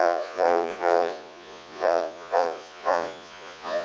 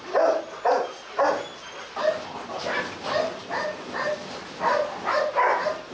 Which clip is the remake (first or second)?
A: first